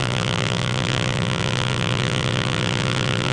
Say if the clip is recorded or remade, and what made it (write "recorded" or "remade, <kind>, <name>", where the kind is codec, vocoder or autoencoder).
remade, vocoder, BigVGAN v2